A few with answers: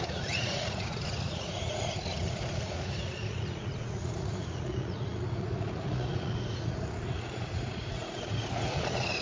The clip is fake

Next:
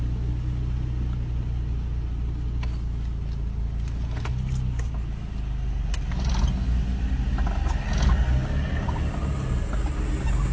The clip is real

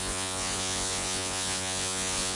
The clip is fake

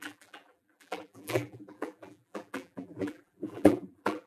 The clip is fake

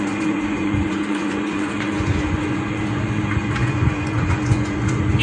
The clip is fake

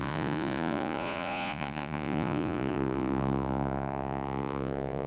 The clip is fake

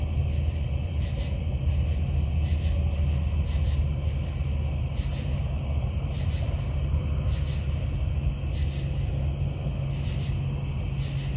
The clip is real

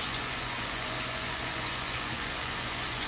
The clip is fake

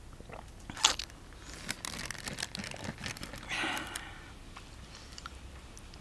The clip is real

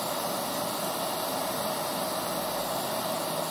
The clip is real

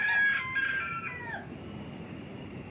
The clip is real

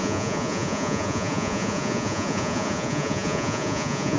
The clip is fake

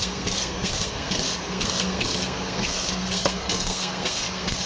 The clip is fake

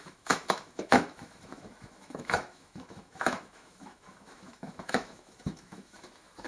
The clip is fake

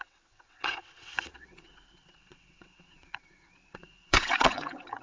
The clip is fake